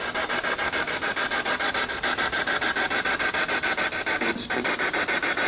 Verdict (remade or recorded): recorded